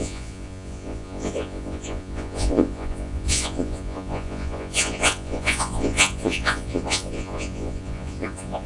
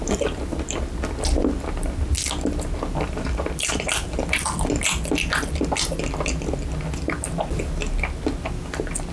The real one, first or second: second